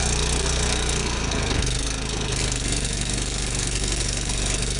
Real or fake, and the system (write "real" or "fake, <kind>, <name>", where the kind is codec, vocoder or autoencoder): fake, codec, SNAC